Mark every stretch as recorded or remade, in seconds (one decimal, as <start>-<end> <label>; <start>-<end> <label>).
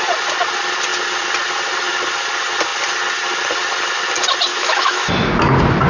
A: 0.0-4.5 recorded; 4.5-5.1 remade; 5.1-5.9 recorded